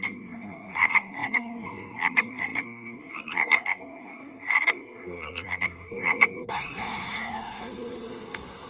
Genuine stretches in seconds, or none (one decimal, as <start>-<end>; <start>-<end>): none